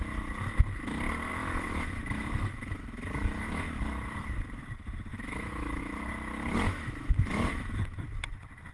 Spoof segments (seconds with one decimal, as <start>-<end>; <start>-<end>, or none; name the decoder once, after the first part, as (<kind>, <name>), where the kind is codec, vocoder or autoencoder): 1.3-3.6 (autoencoder, DAC-VAE); 5.1-5.8; 6.4-7.8